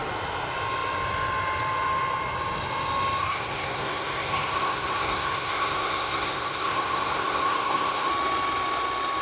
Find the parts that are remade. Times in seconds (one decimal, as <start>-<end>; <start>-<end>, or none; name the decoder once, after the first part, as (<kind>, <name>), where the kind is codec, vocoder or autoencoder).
3.2-8.1 (codec, SNAC)

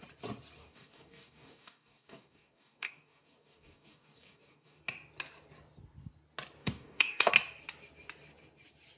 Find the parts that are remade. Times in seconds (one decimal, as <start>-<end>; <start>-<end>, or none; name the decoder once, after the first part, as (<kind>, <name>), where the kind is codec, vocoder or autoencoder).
0.6-4.8 (codec, DAC); 6.6-7.3

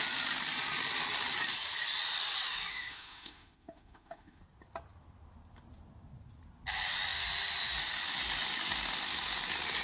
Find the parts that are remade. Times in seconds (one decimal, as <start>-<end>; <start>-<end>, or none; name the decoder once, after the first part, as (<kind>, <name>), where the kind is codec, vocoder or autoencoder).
2.7-4.4 (autoencoder, DAC-VAE)

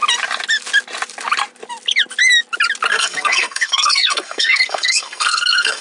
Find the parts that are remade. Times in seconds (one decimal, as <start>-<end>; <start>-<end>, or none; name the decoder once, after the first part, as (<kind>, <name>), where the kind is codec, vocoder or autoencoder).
2.9-5.8 (codec, SNAC)